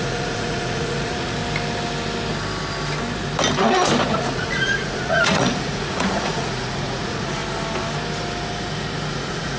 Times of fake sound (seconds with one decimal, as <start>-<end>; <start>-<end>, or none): 0.0-1.4; 4.2-7.4; 9.1-9.6